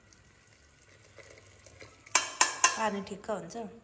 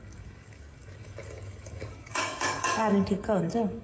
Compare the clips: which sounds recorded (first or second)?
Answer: first